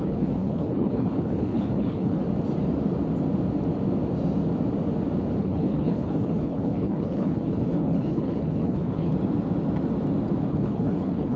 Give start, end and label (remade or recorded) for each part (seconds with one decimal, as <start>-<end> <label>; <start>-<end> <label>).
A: 0.0-2.2 remade; 2.2-5.4 recorded; 5.4-9.1 remade; 9.1-10.5 recorded; 10.5-11.4 remade